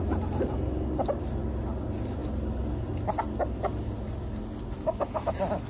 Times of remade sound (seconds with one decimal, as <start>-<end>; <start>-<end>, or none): none

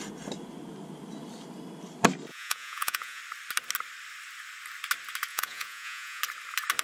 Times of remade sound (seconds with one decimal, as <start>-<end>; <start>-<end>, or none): 2.3-3.2; 5.3-6.2

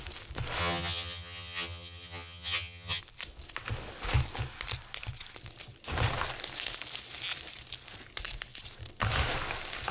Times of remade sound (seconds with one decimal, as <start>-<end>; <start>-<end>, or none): 0.6-3.0